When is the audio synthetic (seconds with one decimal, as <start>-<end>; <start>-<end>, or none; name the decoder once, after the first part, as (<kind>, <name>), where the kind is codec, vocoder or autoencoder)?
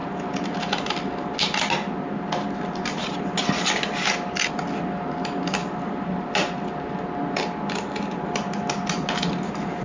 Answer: none